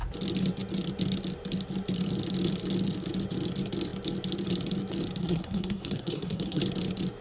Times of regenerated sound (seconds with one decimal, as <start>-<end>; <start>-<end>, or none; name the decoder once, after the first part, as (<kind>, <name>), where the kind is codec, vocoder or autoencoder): 5.2-6.6 (codec, SNAC)